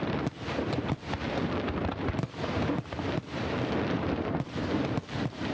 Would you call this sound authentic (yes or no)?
no